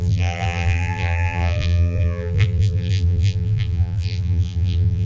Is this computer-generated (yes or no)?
yes